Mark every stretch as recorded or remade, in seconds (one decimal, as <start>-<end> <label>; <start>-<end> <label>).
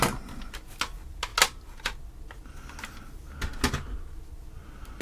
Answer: 0.0-5.0 recorded